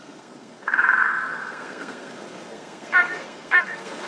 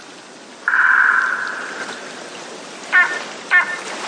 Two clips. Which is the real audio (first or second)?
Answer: second